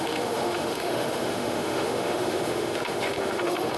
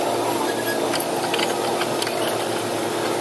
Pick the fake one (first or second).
first